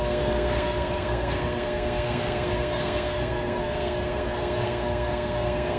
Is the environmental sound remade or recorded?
remade